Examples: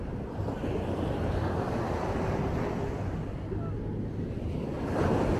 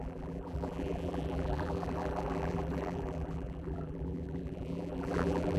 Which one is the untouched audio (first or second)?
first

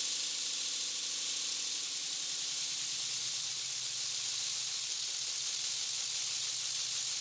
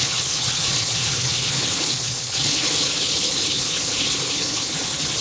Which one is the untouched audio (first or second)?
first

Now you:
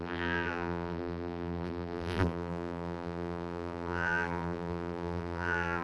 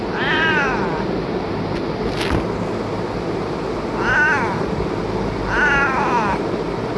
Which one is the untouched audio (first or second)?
second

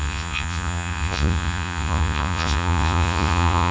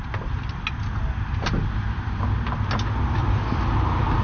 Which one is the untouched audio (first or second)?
second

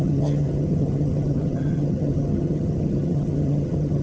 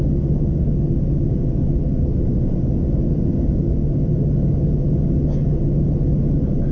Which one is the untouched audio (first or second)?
second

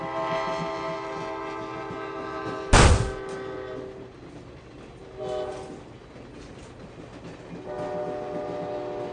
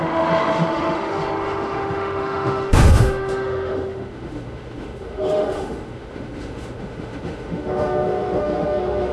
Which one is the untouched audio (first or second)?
first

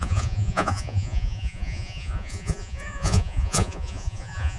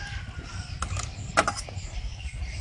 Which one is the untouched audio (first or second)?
second